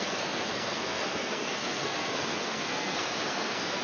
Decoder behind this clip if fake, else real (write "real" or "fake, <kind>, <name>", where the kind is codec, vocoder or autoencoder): fake, codec, SNAC